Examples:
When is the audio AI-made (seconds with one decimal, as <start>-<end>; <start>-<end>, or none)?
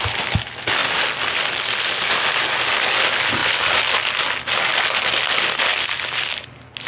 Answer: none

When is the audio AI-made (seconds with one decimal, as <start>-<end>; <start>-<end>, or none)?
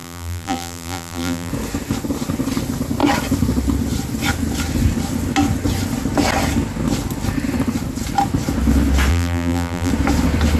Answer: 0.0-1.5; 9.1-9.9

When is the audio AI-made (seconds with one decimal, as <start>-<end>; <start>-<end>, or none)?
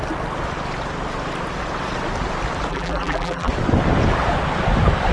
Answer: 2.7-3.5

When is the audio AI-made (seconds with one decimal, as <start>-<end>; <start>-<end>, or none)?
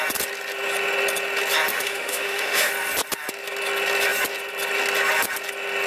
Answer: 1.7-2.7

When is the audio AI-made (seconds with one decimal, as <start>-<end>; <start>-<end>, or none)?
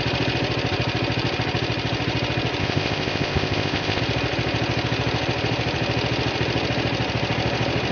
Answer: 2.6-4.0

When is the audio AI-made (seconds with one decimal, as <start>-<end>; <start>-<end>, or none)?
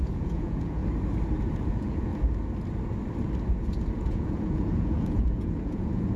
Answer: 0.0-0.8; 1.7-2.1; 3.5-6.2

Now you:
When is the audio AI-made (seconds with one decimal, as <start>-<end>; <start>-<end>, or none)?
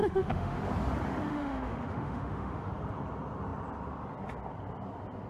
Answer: 0.0-0.6; 1.3-2.7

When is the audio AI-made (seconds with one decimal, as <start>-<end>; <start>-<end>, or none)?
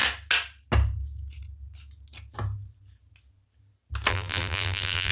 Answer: 4.1-5.1